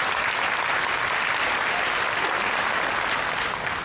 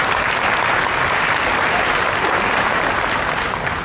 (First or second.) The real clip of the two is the first